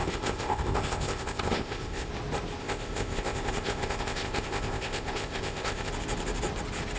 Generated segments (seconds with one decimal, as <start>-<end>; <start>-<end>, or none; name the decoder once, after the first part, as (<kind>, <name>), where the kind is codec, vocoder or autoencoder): 0.0-2.1 (codec, ZipCodec); 2.6-5.9